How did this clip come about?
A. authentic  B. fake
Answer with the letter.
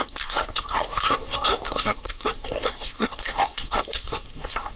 B